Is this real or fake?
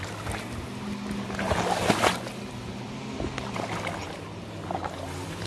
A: real